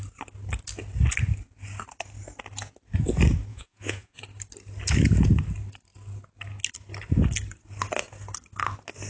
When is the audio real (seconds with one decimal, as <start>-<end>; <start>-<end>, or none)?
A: 0.0-3.5; 4.2-9.1